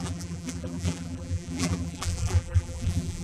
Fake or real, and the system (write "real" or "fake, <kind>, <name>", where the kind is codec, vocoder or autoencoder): fake, vocoder, BigVGAN v2